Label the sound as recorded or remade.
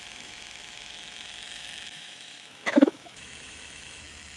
remade